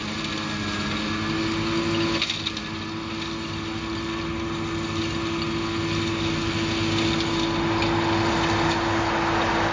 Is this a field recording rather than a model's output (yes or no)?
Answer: yes